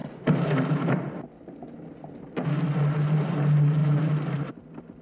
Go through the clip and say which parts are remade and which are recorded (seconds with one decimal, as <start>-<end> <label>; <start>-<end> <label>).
0.0-1.0 remade; 1.0-3.8 recorded; 3.8-4.5 remade; 4.5-5.0 recorded